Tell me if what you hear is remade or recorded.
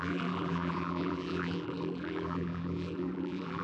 remade